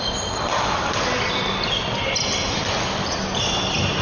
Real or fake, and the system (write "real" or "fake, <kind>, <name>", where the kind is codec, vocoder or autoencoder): real